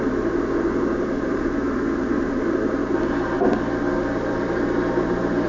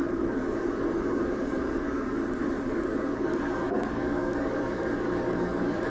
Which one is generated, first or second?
second